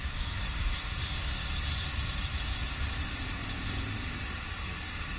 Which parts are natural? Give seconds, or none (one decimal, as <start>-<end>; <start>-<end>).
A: 1.4-4.5